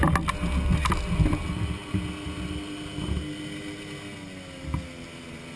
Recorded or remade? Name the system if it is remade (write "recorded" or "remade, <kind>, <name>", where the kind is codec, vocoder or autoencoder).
recorded